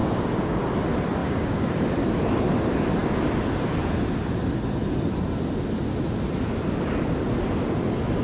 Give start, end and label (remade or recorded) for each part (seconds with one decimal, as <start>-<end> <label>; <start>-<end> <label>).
0.0-0.6 remade; 0.6-1.2 recorded; 1.2-1.7 remade; 1.7-8.2 recorded